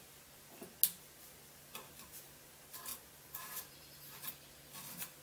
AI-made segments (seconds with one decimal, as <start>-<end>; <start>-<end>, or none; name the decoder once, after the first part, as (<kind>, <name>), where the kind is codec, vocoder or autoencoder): 2.9-4.2 (vocoder, BigVGAN v2)